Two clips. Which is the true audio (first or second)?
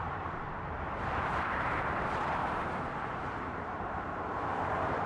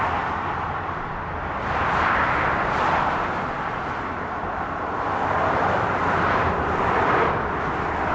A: second